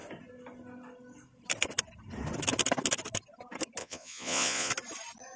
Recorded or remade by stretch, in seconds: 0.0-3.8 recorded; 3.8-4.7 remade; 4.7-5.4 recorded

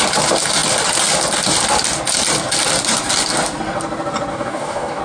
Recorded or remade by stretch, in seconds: 0.0-4.3 recorded; 4.3-5.0 remade

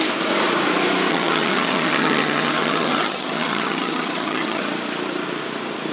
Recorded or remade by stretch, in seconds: 0.0-1.1 recorded; 1.1-4.6 remade; 4.6-5.9 recorded

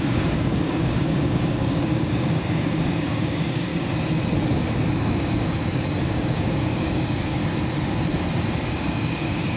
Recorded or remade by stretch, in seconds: 0.0-3.7 remade; 3.7-4.9 recorded; 4.9-7.4 remade; 7.4-8.7 recorded; 8.7-9.6 remade